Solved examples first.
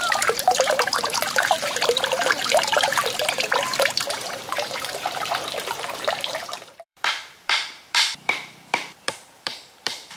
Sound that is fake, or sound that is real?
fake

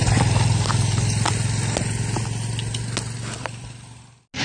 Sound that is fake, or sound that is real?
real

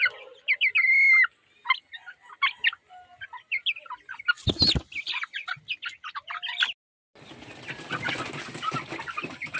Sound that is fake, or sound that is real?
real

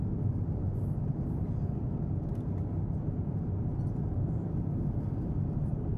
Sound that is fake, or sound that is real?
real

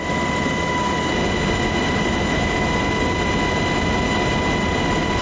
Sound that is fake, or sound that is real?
real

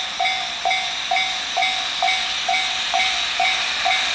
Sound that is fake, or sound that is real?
real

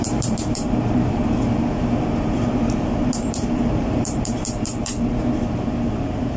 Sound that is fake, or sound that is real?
fake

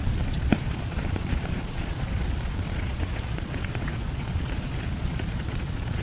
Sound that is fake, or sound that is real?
fake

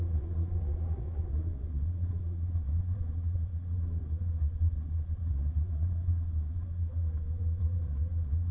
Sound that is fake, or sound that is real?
fake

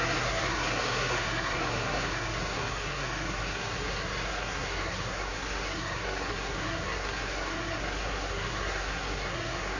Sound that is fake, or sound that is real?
fake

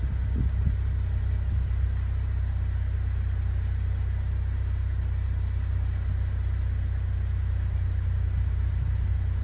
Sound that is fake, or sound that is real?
real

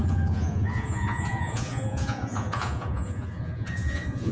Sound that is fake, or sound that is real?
fake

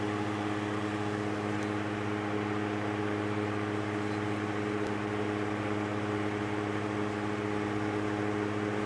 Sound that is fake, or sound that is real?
real